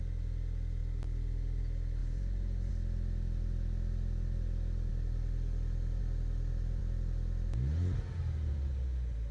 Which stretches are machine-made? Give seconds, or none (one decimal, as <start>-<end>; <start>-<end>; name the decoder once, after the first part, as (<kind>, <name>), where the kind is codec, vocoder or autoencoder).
2.0-2.7 (vocoder, BigVGAN v2)